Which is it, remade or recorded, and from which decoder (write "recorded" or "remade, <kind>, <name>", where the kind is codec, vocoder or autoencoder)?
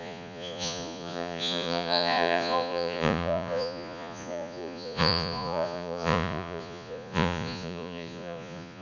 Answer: remade, vocoder, Vocos